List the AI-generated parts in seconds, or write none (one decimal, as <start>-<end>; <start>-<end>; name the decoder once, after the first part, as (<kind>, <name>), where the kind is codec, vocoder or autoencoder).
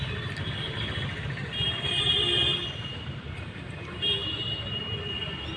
1.4-4.8 (vocoder, BigVGAN v2)